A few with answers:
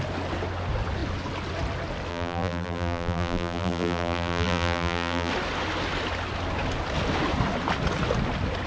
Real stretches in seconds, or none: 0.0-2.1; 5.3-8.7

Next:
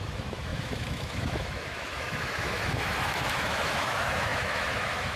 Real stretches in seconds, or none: none

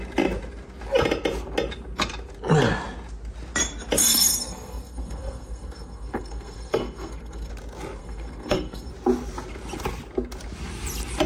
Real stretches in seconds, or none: 0.0-4.0; 7.5-8.0; 8.9-11.3

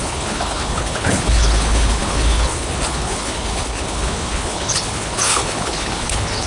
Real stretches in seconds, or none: none

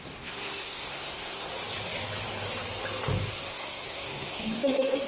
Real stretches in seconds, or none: 1.5-3.3